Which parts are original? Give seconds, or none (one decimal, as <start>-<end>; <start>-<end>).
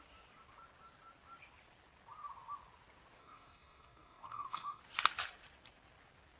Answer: 0.0-3.2; 4.8-6.4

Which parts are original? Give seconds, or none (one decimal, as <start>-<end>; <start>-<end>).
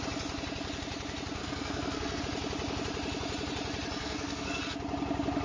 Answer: 0.0-1.4; 2.2-4.0; 4.6-5.4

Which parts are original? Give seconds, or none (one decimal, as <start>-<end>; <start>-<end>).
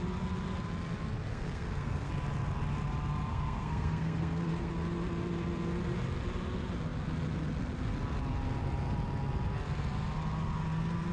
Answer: 0.0-1.3; 2.1-3.3; 4.7-11.1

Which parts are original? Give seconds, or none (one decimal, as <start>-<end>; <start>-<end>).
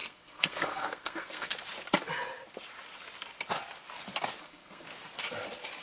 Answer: 1.5-4.4; 4.9-5.8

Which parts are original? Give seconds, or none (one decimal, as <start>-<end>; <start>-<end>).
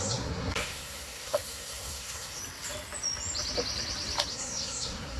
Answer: 2.4-4.3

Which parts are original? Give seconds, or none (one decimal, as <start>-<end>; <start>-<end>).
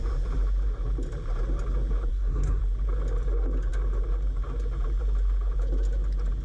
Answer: 0.0-2.1; 2.6-6.4